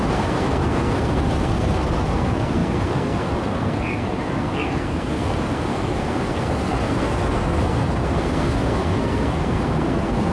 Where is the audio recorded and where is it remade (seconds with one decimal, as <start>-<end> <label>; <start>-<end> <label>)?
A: 0.0-10.3 remade